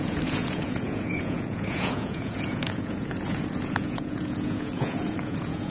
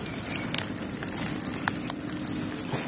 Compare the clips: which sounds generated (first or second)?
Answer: first